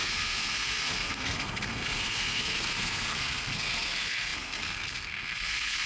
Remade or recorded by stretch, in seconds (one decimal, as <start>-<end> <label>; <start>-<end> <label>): 0.0-5.9 remade